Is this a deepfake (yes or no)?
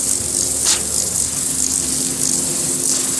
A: no